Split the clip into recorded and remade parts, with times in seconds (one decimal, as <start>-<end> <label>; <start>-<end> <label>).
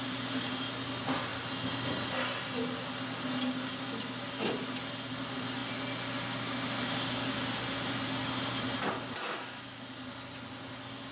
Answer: 0.0-11.1 recorded